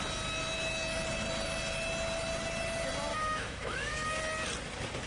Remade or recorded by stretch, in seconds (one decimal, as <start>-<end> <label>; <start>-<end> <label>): 0.0-3.1 recorded; 3.1-4.2 remade; 4.2-5.1 recorded